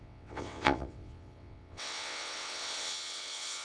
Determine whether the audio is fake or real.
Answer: fake